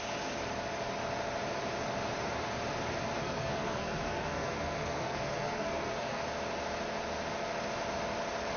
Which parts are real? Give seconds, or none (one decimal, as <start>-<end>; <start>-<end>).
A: 0.0-3.2; 6.2-8.6